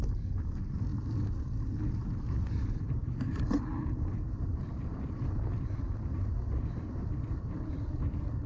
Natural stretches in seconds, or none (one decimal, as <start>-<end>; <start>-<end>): 0.0-8.5